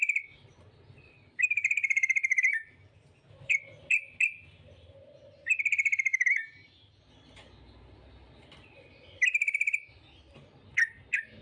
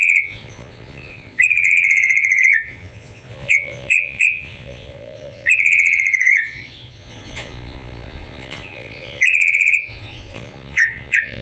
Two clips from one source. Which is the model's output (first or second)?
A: second